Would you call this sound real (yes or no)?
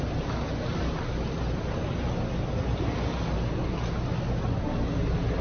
yes